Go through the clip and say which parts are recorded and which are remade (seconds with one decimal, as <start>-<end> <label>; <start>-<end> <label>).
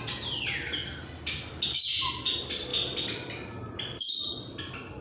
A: 0.0-5.0 recorded